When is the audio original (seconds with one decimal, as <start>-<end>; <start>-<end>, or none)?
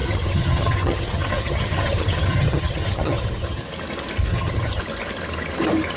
3.6-4.3; 4.8-6.0